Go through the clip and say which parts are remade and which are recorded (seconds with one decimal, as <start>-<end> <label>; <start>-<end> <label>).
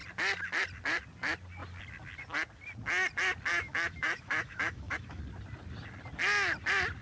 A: 0.0-3.5 recorded; 3.5-5.2 remade; 5.2-7.0 recorded